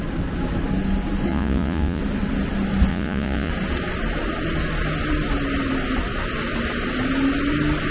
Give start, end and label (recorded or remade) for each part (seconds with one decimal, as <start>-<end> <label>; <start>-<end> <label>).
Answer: 0.0-1.3 recorded; 1.3-2.0 remade; 2.0-2.9 recorded; 2.9-3.5 remade; 3.5-7.9 recorded